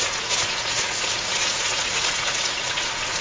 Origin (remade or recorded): remade